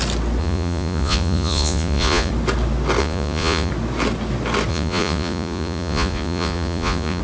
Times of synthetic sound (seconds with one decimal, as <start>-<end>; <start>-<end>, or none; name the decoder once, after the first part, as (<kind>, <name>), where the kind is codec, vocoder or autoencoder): 0.4-2.3 (vocoder, Vocos); 3.0-3.7; 4.7-7.2